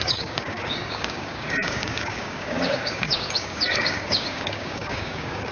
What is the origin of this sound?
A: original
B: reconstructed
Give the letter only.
B